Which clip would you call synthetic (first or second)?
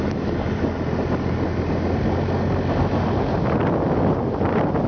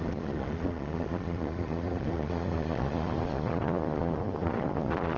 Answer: second